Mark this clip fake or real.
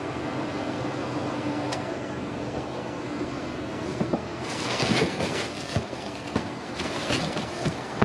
fake